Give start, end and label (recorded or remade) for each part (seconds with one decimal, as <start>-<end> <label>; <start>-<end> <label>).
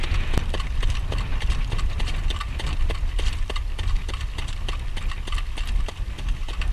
0.0-1.3 recorded; 1.3-4.8 remade; 4.8-6.7 recorded